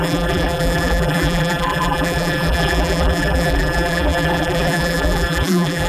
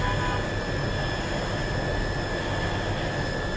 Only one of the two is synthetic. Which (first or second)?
first